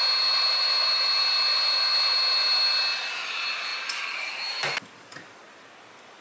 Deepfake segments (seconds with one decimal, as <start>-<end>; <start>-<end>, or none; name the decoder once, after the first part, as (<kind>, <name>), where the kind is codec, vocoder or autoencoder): none